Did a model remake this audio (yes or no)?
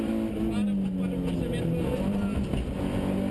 no